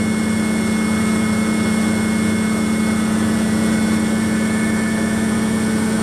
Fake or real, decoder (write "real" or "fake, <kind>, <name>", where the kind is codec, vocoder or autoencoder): fake, vocoder, Vocos